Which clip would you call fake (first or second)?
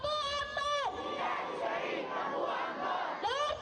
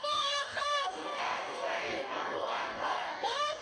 second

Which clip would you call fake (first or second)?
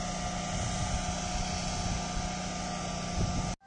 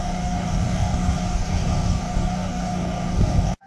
second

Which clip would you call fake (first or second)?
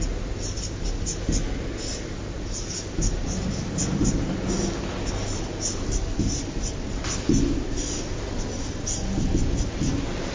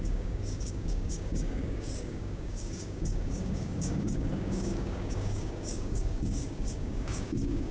second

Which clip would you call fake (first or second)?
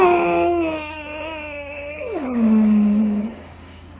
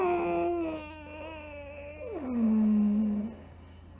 first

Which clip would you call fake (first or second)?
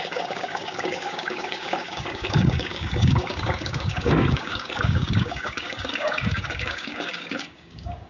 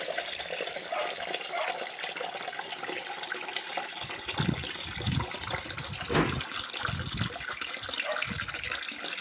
first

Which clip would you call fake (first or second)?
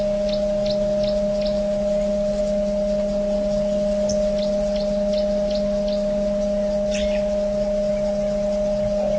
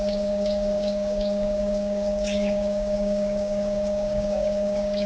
second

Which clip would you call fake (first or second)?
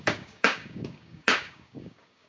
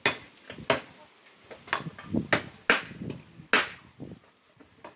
first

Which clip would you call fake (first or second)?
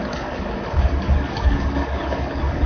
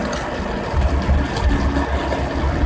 first